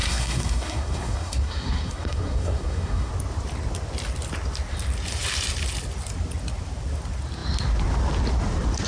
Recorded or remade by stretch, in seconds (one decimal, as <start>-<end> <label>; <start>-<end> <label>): 0.0-3.1 remade; 3.1-8.9 recorded